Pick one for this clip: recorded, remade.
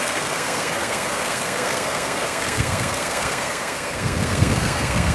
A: remade